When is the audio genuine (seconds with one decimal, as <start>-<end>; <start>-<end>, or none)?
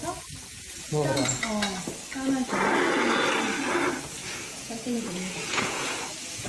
0.0-0.5; 1.4-4.2; 6.0-6.5